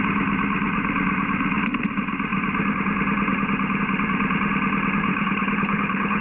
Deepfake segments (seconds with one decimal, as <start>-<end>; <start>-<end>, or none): 5.1-6.2